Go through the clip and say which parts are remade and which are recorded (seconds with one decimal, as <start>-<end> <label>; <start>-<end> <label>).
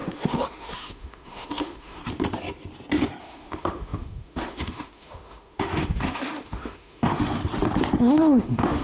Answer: 0.0-2.0 remade; 2.0-3.2 recorded; 3.2-7.4 remade; 7.4-8.0 recorded; 8.0-8.8 remade